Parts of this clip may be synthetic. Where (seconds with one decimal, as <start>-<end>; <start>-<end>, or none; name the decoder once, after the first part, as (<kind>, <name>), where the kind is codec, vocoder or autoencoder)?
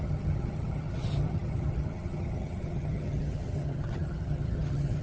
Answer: 0.0-5.0 (vocoder, HiFi-GAN)